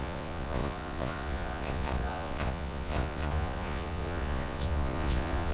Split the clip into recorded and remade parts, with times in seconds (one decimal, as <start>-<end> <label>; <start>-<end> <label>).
0.0-5.5 remade